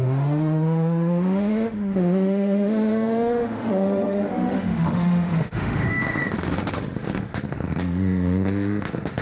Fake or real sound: fake